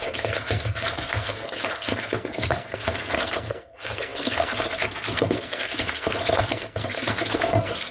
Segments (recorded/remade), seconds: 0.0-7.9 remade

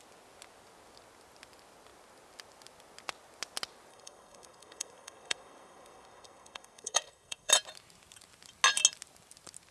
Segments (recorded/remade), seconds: 0.0-3.9 recorded; 3.9-7.5 remade; 7.5-9.7 recorded

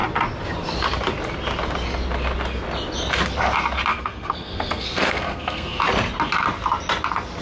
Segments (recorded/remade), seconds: 0.0-3.9 recorded; 3.9-5.8 remade; 5.8-7.4 recorded